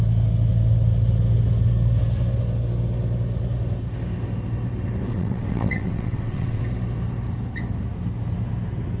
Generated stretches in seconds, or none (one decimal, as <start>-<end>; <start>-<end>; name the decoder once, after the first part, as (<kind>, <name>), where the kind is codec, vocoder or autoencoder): 5.1-6.6 (vocoder, WaveNeXt)